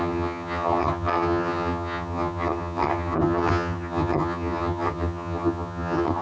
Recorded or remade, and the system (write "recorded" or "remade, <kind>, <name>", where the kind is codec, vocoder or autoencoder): remade, vocoder, HiFi-GAN